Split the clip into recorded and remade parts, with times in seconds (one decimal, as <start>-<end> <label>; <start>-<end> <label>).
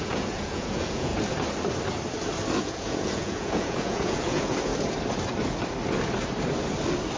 0.0-1.1 remade; 1.1-2.6 recorded; 2.6-4.7 remade; 4.7-7.2 recorded